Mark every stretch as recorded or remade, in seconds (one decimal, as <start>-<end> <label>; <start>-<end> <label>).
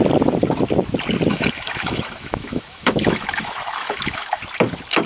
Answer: 0.0-1.3 recorded; 1.3-4.4 remade; 4.4-5.1 recorded